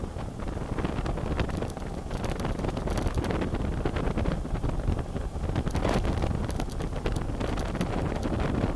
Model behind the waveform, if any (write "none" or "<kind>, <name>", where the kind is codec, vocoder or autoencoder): none